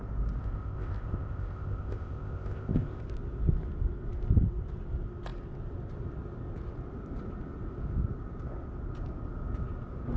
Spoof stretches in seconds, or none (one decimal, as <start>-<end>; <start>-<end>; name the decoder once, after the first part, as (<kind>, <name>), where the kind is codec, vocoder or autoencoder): 0.4-3.0 (codec, ZipCodec)